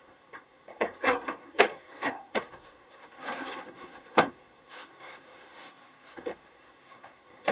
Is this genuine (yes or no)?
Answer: no